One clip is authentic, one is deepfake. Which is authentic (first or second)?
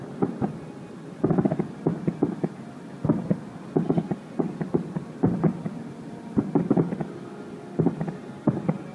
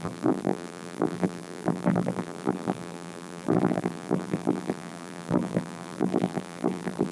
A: first